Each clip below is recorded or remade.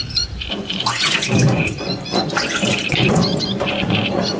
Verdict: remade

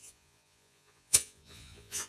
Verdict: remade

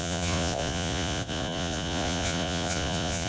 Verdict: remade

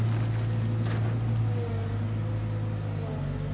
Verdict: recorded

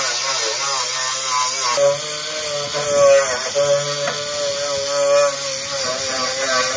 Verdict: recorded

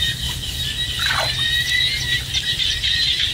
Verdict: recorded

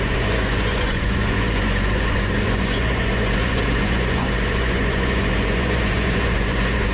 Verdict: remade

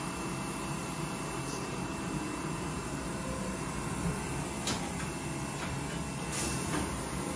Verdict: recorded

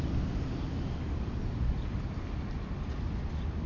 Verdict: recorded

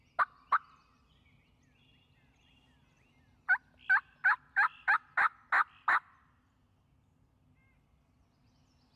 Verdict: recorded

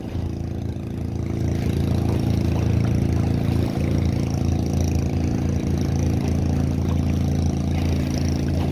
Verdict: recorded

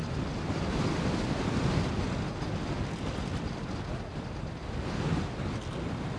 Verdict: recorded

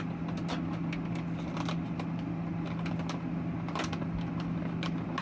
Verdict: recorded